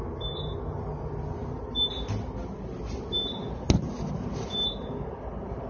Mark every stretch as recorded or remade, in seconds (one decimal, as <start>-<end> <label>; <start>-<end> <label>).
0.0-5.7 recorded

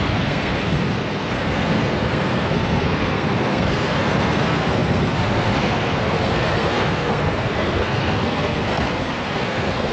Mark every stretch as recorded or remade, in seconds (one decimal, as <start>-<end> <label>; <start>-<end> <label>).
0.0-9.9 remade

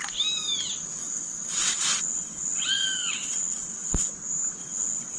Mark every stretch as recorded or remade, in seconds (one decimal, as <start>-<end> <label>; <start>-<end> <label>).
0.0-1.0 recorded; 1.0-4.1 remade; 4.1-4.6 recorded; 4.6-5.2 remade

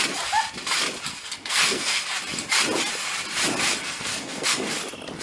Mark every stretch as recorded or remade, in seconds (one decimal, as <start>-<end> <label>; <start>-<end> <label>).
0.0-1.1 recorded; 1.1-2.0 remade; 2.0-3.8 recorded; 3.8-4.7 remade; 4.7-5.2 recorded

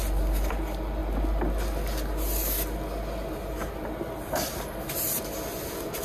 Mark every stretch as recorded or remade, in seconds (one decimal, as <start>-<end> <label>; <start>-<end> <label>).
0.0-6.0 recorded

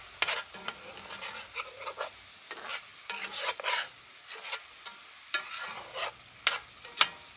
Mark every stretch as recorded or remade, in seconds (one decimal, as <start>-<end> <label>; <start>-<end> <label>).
0.0-7.4 recorded

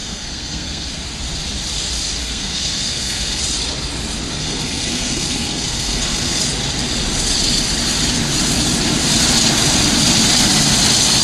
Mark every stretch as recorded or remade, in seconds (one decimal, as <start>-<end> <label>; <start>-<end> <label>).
0.0-0.9 remade; 0.9-2.2 recorded; 2.2-3.4 remade; 3.4-4.4 recorded; 4.4-6.4 remade; 6.4-11.2 recorded